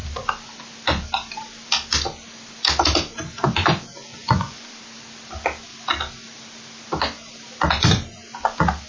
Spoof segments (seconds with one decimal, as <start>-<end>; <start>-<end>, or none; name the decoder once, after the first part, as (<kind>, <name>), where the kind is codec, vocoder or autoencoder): 4.1-4.7 (vocoder, Vocos)

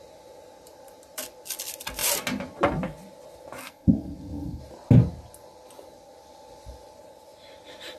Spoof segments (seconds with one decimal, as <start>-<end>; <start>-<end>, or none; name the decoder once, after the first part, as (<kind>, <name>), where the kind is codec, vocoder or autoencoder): 3.6-4.6 (codec, SNAC)

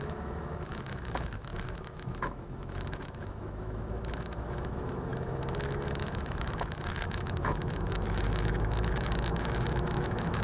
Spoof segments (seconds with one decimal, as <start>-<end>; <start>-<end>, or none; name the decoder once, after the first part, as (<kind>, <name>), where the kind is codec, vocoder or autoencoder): 0.0-10.4 (autoencoder, DAC-VAE)